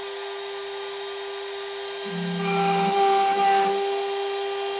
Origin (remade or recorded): recorded